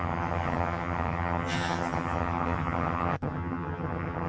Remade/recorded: remade